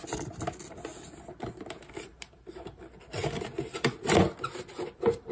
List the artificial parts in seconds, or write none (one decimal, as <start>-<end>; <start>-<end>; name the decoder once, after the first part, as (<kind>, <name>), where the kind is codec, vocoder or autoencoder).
none

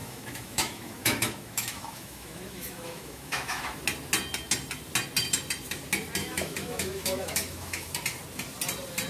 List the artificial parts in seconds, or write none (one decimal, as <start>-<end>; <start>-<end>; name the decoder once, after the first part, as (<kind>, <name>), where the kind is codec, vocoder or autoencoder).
0.0-3.8 (autoencoder, DAC-VAE); 6.2-7.9

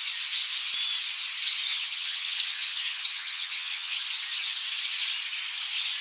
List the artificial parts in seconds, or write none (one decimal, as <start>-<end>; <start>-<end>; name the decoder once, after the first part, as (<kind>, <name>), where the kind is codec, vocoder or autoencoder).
1.7-4.0 (vocoder, HiFi-GAN)

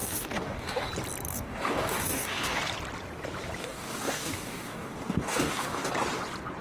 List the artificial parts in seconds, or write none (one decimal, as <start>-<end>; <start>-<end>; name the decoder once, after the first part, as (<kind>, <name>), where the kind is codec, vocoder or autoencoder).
0.0-0.9 (codec, DAC); 1.3-2.6; 3.6-5.9

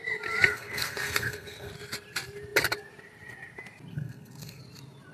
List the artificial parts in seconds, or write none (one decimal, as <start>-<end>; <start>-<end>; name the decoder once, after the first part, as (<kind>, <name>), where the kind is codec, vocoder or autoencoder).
0.5-1.7 (codec, SNAC); 3.9-4.6

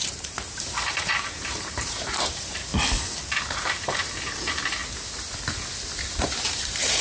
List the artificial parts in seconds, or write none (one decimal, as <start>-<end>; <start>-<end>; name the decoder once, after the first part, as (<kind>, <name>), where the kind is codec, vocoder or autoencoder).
0.0-2.7 (vocoder, BigVGAN v2); 4.1-4.8; 6.1-7.0

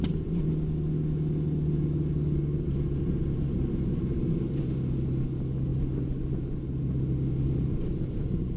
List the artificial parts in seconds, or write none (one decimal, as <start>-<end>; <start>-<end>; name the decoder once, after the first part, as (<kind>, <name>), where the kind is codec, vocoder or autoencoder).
none